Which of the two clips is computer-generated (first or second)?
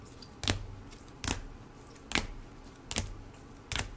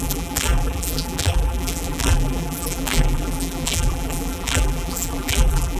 second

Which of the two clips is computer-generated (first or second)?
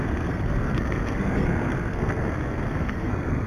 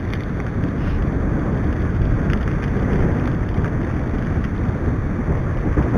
first